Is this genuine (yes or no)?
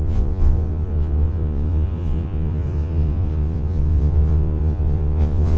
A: no